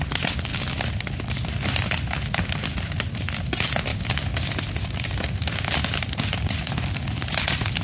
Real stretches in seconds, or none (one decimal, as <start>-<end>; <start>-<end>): 0.0-7.8